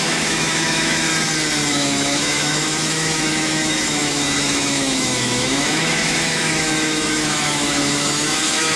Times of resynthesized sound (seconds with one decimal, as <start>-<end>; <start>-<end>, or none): 0.0-1.1; 1.7-8.8